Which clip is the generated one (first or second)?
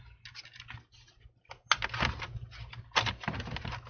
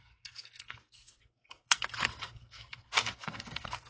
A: second